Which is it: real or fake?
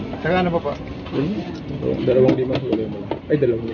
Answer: real